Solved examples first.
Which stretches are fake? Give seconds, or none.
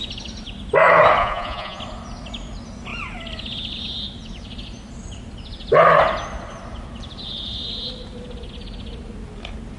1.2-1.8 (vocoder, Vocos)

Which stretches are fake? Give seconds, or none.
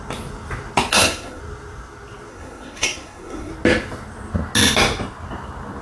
0.9-1.4 (codec, SNAC); 2.3-3.5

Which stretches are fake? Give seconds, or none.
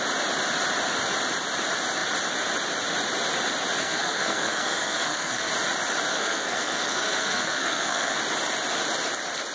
3.8-5.5 (codec, SNAC); 6.1-8.2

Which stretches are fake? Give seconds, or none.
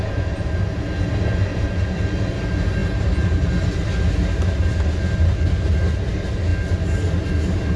none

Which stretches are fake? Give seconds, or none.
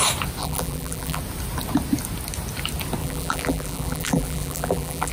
0.4-1.2 (vocoder, BigVGAN v2); 3.0-5.1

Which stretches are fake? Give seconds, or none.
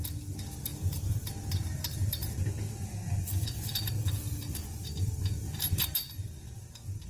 0.7-1.3 (vocoder, BigVGAN v2); 3.2-5.9